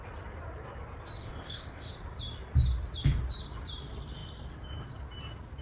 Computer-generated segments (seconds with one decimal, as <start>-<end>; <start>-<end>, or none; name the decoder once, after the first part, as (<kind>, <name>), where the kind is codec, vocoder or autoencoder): 1.2-1.9 (codec, ZipCodec)